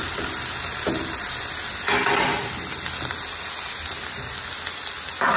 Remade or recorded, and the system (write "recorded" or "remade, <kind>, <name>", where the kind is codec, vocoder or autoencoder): recorded